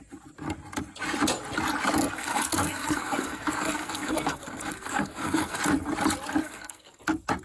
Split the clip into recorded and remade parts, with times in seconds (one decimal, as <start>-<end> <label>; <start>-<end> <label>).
0.0-2.0 recorded; 2.0-5.6 remade; 5.6-6.4 recorded; 6.4-7.0 remade; 7.0-7.4 recorded